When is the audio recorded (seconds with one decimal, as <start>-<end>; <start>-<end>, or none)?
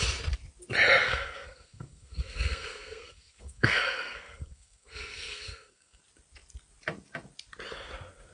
0.0-1.0; 6.0-8.3